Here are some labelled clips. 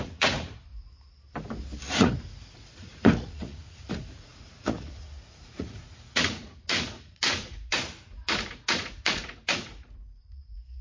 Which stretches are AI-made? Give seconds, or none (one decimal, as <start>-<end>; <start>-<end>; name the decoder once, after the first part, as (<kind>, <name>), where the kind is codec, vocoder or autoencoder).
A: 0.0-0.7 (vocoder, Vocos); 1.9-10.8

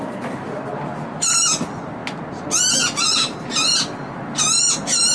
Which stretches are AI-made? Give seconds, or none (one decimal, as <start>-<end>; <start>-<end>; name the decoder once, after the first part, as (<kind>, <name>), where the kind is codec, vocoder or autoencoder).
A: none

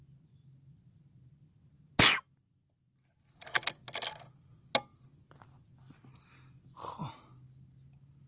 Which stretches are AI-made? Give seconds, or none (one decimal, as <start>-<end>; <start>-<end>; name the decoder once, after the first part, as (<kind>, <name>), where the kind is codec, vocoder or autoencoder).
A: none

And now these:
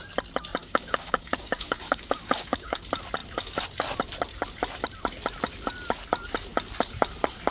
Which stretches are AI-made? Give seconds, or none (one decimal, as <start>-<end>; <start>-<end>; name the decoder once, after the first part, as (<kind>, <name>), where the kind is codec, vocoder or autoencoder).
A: 0.6-2.8 (codec, DAC)